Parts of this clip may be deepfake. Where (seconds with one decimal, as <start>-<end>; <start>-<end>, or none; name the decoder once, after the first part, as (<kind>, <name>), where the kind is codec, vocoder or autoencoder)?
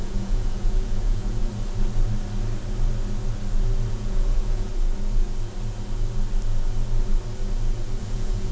0.0-1.4 (vocoder, Vocos); 3.9-4.7; 8.0-8.5